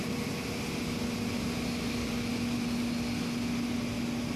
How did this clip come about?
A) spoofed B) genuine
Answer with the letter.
B